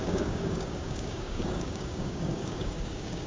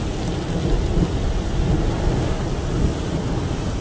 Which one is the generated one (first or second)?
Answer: first